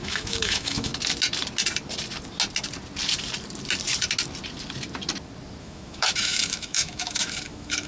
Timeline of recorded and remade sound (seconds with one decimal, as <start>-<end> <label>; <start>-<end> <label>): 0.0-0.9 remade; 0.9-5.6 recorded; 5.6-7.9 remade